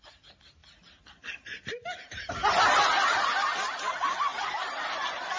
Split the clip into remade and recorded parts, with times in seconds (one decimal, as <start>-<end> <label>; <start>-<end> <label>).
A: 0.0-4.3 recorded; 4.3-4.8 remade; 4.8-5.4 recorded